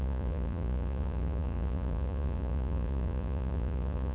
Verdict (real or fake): fake